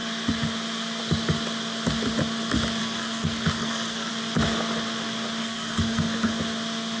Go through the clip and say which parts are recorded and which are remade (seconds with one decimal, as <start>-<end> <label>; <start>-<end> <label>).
0.0-2.8 recorded; 2.8-4.1 remade; 4.1-5.4 recorded; 5.4-6.3 remade; 6.3-7.0 recorded